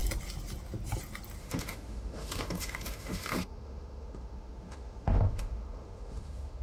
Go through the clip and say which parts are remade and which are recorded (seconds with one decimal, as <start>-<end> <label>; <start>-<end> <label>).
0.0-1.4 recorded; 1.4-6.6 remade